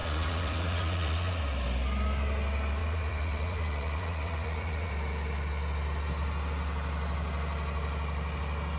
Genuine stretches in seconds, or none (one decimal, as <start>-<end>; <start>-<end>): 1.4-2.8; 4.9-8.8